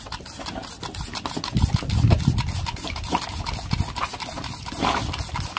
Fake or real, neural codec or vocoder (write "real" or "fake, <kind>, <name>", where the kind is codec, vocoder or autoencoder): real